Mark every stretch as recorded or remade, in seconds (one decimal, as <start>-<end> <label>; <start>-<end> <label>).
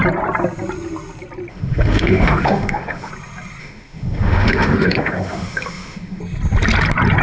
0.0-1.5 recorded; 1.5-3.1 remade; 3.1-3.6 recorded; 3.6-6.2 remade; 6.2-7.2 recorded